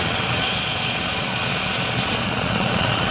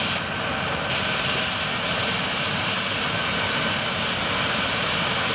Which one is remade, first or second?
first